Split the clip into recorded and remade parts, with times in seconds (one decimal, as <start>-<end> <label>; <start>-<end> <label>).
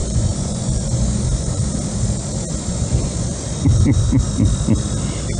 0.0-1.7 remade; 1.7-2.7 recorded; 2.7-4.3 remade; 4.3-5.4 recorded